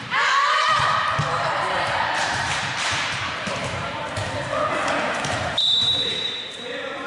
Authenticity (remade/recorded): remade